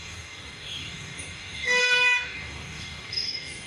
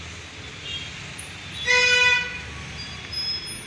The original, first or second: second